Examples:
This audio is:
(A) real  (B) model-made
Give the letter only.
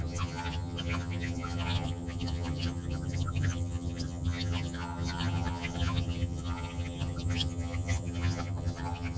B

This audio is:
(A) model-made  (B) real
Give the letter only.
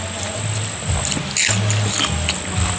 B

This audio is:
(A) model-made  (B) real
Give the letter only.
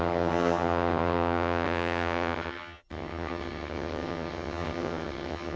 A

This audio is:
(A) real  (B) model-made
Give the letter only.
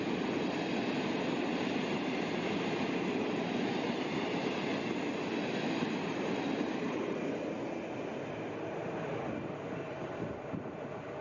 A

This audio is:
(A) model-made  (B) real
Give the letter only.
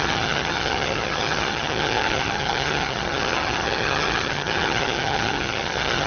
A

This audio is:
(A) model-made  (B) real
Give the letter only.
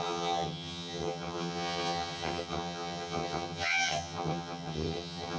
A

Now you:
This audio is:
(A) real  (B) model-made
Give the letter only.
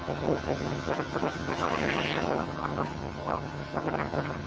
B